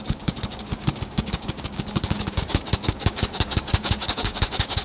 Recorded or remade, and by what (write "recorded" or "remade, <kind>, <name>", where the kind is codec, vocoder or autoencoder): remade, codec, DAC